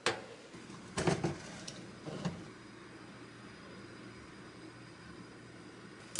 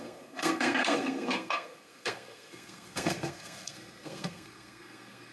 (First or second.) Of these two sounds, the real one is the first